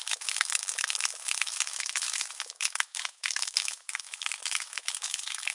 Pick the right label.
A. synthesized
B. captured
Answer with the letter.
A